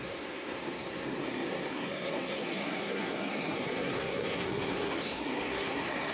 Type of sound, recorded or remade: remade